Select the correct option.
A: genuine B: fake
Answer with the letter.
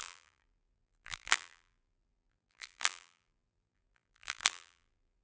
B